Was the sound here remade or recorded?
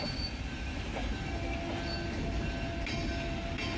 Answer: recorded